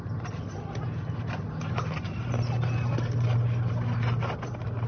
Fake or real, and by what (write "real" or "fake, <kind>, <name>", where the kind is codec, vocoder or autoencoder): real